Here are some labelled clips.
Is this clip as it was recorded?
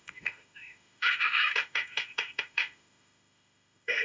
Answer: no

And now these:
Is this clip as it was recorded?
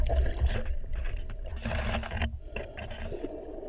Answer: yes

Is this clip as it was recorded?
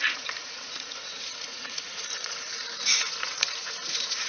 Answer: no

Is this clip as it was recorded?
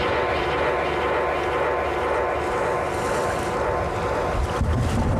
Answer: yes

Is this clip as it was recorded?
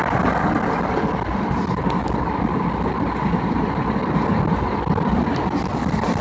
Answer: yes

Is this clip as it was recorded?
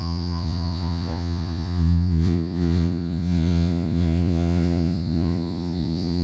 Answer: no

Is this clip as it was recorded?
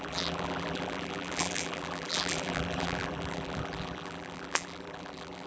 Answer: no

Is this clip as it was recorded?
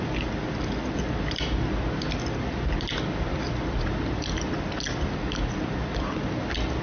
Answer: yes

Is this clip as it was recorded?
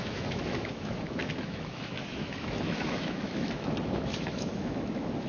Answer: no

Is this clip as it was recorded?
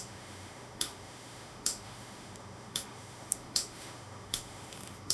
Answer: no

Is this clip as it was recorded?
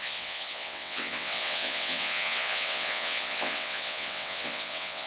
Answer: no